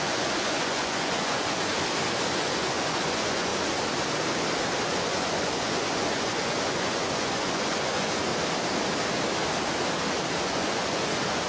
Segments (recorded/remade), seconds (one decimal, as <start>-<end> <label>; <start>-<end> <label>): 0.0-1.7 remade; 1.7-2.3 recorded; 2.3-3.5 remade; 3.5-4.9 recorded; 4.9-8.3 remade; 8.3-10.4 recorded; 10.4-11.5 remade